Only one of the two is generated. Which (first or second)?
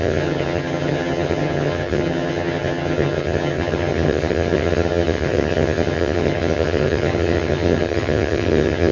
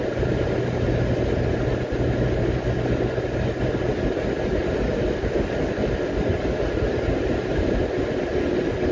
first